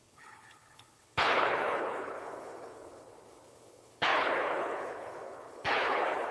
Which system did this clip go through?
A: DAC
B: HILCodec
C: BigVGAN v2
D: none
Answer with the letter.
B